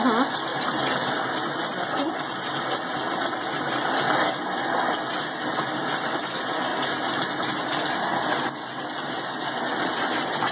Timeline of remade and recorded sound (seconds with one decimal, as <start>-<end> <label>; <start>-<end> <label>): 0.0-0.5 recorded; 0.5-4.0 remade; 4.0-5.5 recorded; 5.5-6.2 remade; 6.2-10.5 recorded